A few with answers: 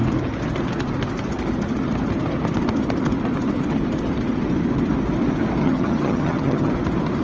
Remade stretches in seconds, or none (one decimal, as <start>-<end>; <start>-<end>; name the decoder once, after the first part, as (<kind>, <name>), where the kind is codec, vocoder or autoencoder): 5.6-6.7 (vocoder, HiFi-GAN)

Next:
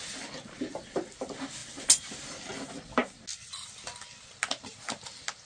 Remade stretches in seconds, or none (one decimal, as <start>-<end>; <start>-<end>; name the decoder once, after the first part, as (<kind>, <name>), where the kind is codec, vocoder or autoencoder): none

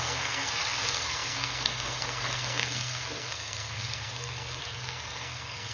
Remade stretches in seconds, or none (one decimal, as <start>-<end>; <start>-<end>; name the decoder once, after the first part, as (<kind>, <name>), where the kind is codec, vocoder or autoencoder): 0.0-5.7 (codec, SNAC)

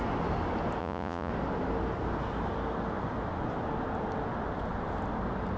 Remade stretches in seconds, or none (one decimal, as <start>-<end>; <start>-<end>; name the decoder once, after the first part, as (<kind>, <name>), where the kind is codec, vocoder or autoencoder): 0.8-1.3 (vocoder, Vocos)

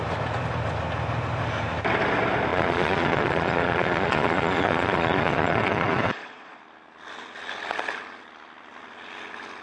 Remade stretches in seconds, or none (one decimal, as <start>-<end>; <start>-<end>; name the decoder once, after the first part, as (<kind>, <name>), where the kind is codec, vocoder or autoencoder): 2.5-6.6 (vocoder, Vocos)

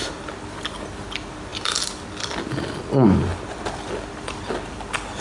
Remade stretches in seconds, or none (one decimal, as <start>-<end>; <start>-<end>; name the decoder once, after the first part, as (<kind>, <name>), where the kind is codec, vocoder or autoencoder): none

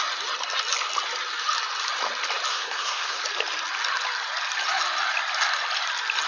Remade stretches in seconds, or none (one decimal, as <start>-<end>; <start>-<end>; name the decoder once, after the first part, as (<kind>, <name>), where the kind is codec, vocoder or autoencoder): 2.5-3.2 (codec, SNAC)

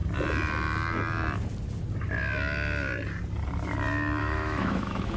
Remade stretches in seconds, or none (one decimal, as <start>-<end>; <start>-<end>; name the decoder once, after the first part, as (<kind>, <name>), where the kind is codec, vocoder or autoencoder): 4.2-5.2 (autoencoder, DAC-VAE)